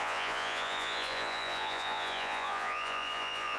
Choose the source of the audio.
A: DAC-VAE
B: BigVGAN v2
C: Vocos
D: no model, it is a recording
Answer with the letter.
C